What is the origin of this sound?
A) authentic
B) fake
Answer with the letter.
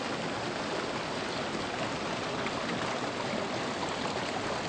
A